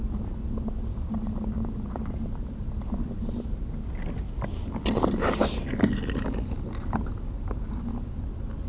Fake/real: real